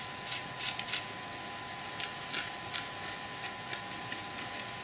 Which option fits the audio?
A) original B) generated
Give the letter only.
A